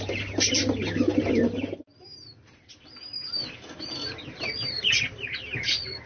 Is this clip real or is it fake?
real